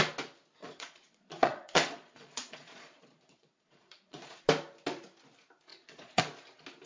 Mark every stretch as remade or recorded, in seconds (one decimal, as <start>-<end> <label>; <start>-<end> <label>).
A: 0.0-0.6 recorded; 0.6-4.4 remade; 4.4-5.7 recorded; 5.7-6.2 remade; 6.2-6.9 recorded